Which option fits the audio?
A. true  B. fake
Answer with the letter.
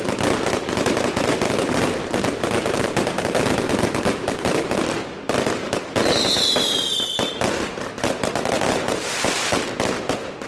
A